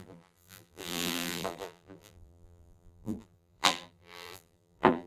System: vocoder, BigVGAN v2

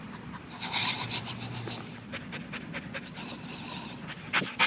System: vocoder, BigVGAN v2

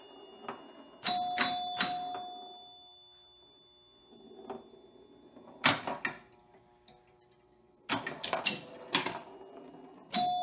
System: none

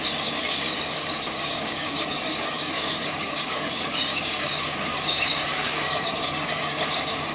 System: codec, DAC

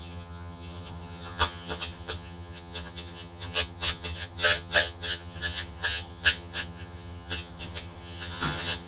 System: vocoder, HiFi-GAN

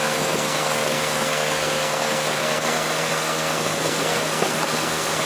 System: codec, SNAC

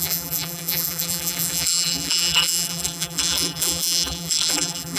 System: vocoder, BigVGAN v2